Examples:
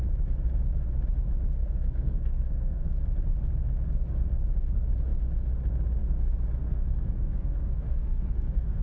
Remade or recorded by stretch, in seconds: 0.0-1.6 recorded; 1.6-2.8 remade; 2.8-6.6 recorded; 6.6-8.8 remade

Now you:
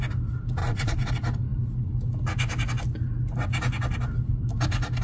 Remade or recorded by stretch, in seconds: 0.0-0.6 recorded; 0.6-1.1 remade; 1.1-5.0 recorded

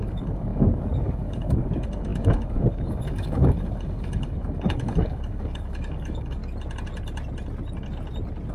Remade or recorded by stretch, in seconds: 0.0-6.4 remade; 6.4-8.5 recorded

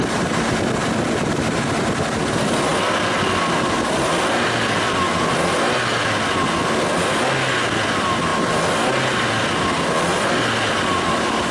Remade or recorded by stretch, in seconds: 0.0-11.5 recorded

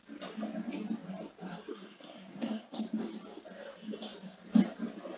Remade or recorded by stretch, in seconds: 0.0-1.7 recorded; 1.7-2.8 remade; 2.8-5.2 recorded

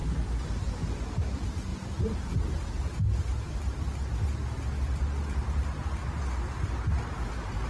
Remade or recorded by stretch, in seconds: 0.0-0.9 remade; 0.9-1.7 recorded; 1.7-2.5 remade; 2.5-7.7 recorded